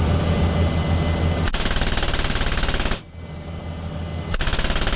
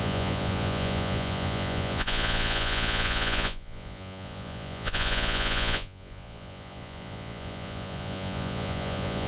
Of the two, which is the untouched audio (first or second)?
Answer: first